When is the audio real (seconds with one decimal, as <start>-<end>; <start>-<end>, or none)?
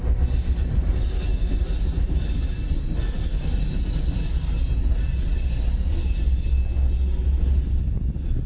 0.0-8.5